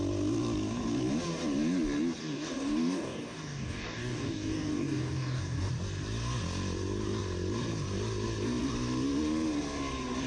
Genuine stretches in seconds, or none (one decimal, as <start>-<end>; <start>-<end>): 0.0-2.2; 5.7-10.3